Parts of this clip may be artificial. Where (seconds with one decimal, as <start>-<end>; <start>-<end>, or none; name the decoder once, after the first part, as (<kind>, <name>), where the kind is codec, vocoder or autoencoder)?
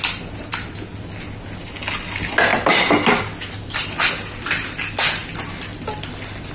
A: none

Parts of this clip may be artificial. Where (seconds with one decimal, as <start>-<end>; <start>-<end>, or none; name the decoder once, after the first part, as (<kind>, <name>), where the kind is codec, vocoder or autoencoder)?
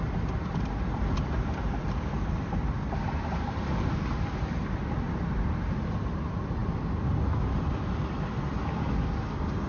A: none